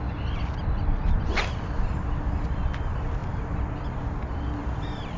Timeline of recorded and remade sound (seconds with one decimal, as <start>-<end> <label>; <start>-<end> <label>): 0.0-5.2 recorded